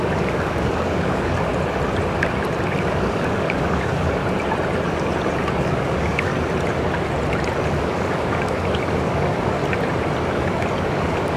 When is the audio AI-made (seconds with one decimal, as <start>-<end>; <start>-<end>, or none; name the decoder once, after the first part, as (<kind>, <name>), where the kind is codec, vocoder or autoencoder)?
0.0-1.5 (codec, DAC); 2.8-4.2; 5.6-6.3; 7.7-9.6; 10.3-11.4